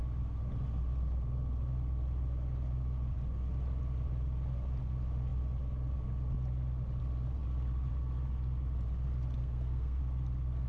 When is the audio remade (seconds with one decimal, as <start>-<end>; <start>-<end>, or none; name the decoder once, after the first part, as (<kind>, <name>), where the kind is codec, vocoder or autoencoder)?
9.4-10.0 (codec, SNAC)